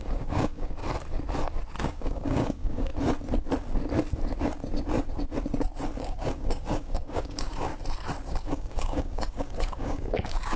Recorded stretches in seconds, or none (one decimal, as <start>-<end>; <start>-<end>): 0.8-1.8; 2.9-6.0; 7.7-8.4